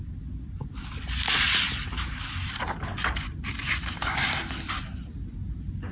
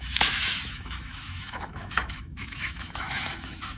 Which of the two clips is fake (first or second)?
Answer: second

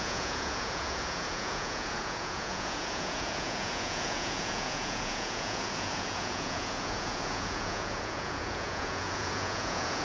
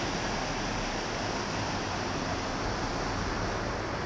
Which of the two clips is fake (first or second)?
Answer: first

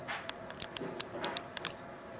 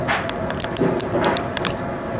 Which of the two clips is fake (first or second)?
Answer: second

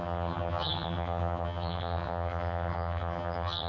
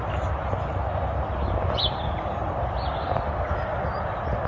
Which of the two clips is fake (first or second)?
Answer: first